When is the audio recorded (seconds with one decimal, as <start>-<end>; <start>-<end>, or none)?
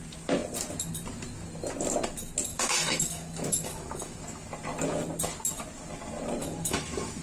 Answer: 0.0-2.5; 4.2-6.4